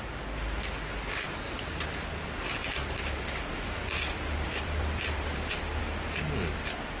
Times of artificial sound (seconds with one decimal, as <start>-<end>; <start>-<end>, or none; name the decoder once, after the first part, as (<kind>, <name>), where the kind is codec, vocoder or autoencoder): 2.6-5.8 (vocoder, BigVGAN v2)